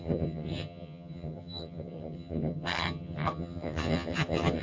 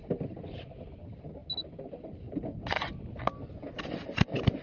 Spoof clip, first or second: first